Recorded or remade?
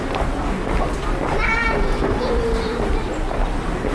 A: recorded